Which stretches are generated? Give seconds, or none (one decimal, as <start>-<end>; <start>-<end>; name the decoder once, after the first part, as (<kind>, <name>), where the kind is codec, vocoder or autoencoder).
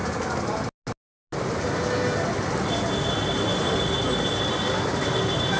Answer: none